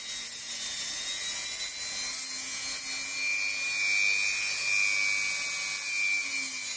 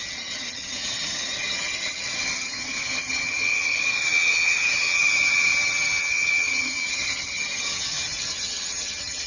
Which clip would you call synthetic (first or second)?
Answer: second